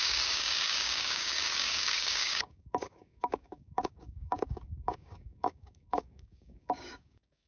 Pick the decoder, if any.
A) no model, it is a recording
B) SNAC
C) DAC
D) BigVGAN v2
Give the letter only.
C